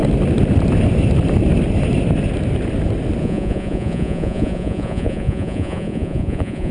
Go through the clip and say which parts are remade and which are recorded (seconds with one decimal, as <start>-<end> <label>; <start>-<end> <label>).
0.0-3.2 recorded; 3.2-6.7 remade